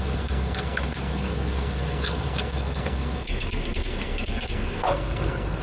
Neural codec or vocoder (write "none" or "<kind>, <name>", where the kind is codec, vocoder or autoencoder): codec, SNAC